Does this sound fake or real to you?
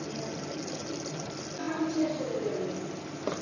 real